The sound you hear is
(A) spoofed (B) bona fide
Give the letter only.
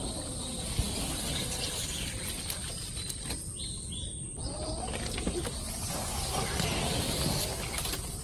B